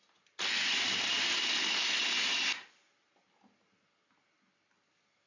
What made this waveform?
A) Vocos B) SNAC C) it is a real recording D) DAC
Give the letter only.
C